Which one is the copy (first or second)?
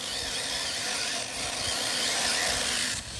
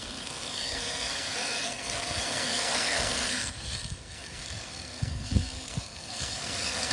second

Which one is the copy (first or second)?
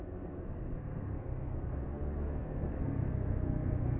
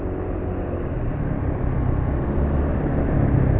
first